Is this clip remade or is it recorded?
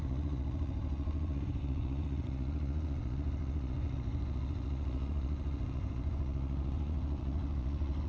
remade